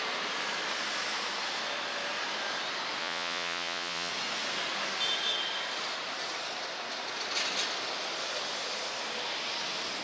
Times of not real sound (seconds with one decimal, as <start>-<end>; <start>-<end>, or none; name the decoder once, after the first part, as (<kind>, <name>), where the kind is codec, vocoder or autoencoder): 3.0-4.1 (vocoder, Vocos)